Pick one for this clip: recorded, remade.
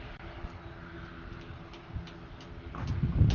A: recorded